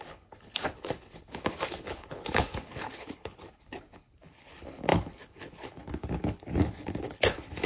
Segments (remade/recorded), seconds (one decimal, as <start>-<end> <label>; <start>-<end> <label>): 0.0-7.7 remade